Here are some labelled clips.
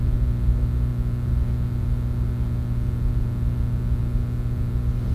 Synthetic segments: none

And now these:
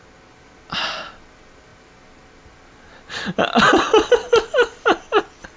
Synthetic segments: none

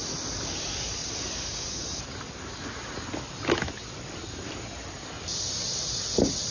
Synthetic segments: 0.0-1.0 (vocoder, BigVGAN v2); 4.9-6.5

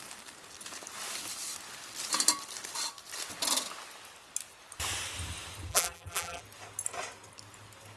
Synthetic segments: 5.7-6.4 (vocoder, BigVGAN v2)

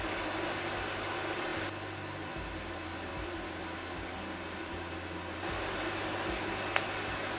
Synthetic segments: none

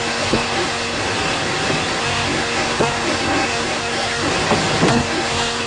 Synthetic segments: 0.0-1.0 (codec, SNAC); 2.0-4.3; 4.9-5.7

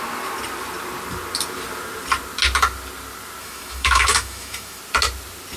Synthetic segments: 3.4-4.8 (autoencoder, DAC-VAE)

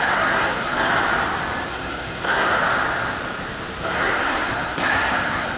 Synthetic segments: 0.0-0.9 (codec, SNAC); 1.7-2.6; 3.8-5.6